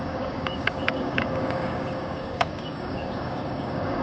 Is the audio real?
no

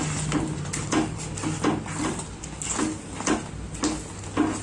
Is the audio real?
yes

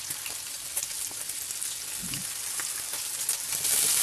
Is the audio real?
yes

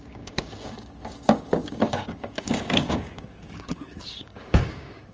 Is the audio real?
no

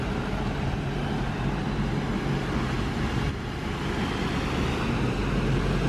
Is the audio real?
yes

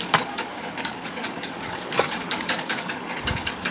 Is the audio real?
no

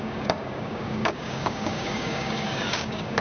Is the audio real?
no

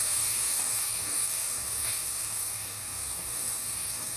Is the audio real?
no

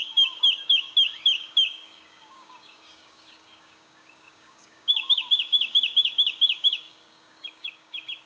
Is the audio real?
no